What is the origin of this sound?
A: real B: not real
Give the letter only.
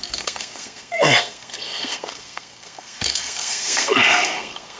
B